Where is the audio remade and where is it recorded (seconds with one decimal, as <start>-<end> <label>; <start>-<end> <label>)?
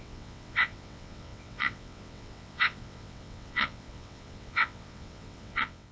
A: 0.0-5.9 remade